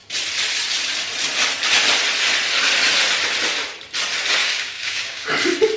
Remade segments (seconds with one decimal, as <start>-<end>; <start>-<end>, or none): 4.4-5.3